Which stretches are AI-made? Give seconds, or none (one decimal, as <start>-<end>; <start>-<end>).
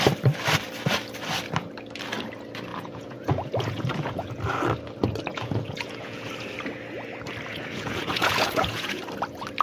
2.7-4.4; 5.3-6.3; 7.5-9.0